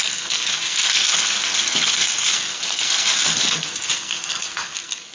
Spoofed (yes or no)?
yes